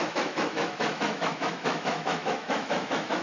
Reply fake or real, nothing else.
fake